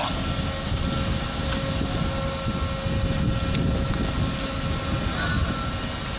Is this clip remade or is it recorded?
recorded